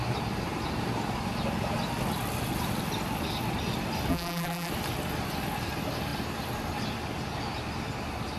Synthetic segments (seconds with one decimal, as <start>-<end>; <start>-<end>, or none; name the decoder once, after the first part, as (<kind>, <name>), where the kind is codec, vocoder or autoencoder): 4.1-4.7 (vocoder, BigVGAN v2)